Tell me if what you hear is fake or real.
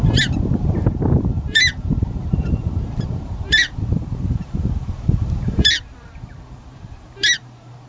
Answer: fake